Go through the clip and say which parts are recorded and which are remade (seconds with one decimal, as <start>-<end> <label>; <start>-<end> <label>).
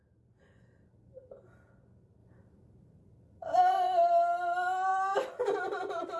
0.0-2.2 recorded; 2.2-3.6 remade; 3.6-4.9 recorded; 4.9-6.2 remade